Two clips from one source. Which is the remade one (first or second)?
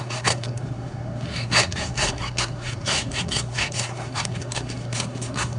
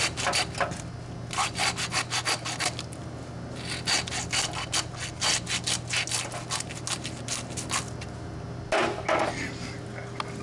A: first